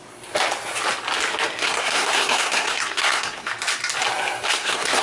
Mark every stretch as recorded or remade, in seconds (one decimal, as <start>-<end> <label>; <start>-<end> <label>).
0.0-1.6 recorded; 1.6-3.5 remade; 3.5-4.5 recorded; 4.5-5.0 remade